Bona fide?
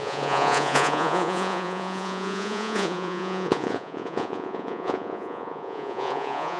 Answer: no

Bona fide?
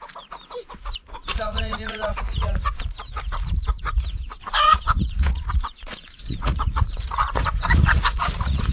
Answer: no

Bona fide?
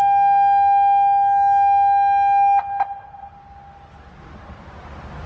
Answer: yes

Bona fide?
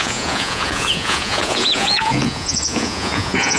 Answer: no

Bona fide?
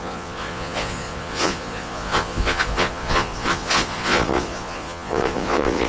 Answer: no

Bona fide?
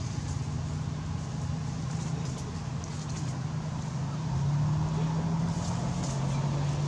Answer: yes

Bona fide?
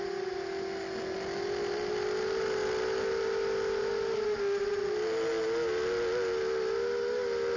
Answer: yes